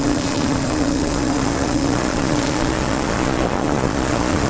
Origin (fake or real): fake